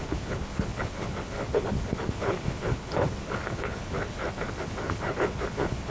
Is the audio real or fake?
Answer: fake